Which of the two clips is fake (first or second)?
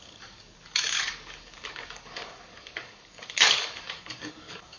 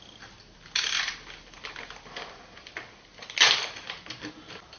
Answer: first